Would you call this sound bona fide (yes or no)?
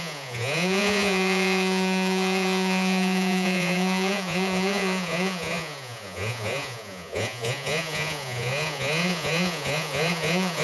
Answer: no